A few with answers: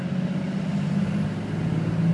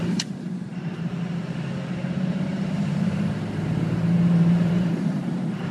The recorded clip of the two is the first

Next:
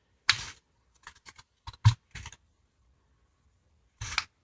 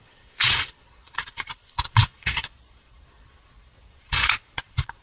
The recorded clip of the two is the first